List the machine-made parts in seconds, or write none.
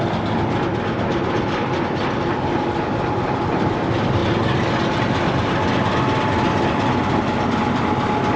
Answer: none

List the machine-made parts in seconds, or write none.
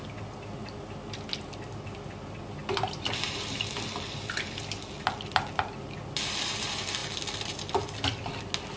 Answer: none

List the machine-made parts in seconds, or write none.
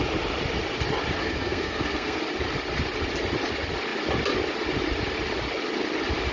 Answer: 1.2-2.2 (codec, SNAC)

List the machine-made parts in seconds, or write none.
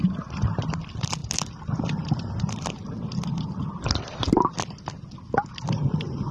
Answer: 1.2-4.8 (vocoder, BigVGAN v2)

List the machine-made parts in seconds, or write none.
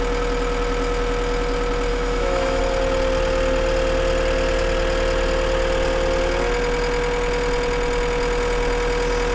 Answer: 1.9-2.6 (autoencoder, DAC-VAE)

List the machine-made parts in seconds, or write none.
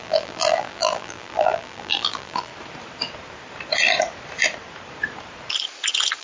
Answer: 0.0-2.5 (vocoder, BigVGAN v2)